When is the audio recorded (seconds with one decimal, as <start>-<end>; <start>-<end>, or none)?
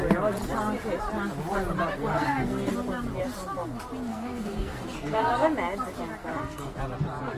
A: 0.0-1.9; 2.7-4.1; 5.2-6.2; 6.8-7.4